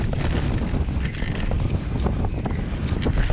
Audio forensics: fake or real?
real